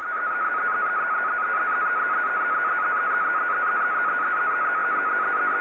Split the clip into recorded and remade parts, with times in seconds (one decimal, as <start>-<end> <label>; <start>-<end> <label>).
0.0-0.5 remade; 0.5-5.6 recorded